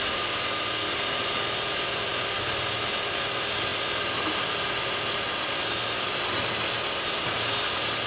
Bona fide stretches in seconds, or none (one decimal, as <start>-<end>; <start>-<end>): 0.0-8.1